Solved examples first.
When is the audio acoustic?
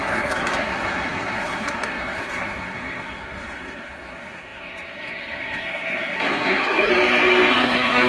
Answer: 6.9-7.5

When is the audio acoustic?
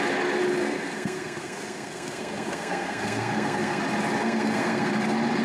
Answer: 0.0-0.6; 3.8-4.2; 4.9-5.4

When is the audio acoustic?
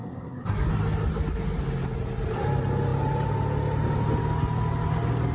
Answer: 0.7-5.3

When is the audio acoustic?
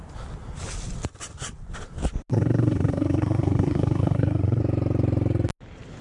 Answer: 0.0-2.3; 4.6-6.0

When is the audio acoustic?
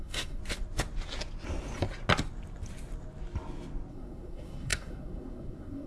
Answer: 0.4-3.9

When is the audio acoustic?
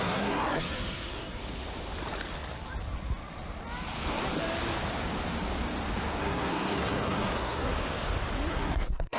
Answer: 1.4-6.2; 7.7-8.5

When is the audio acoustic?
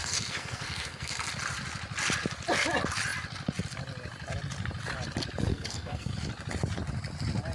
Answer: 1.3-5.5; 6.1-7.5